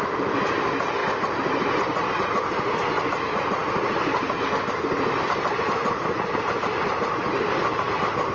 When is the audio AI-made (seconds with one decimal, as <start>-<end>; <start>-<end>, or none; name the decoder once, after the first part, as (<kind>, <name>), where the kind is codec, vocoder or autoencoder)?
none